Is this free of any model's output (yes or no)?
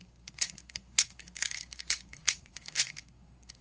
no